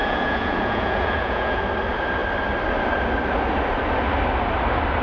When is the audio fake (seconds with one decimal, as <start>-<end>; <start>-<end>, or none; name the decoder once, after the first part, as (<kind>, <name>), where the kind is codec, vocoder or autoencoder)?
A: 0.0-1.6 (vocoder, Vocos)